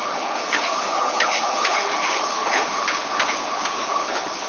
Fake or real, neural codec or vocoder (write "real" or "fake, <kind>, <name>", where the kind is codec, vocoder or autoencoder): fake, codec, HILCodec